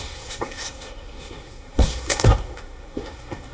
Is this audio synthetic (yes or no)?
yes